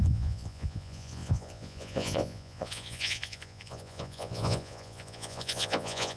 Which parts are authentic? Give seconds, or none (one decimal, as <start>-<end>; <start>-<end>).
none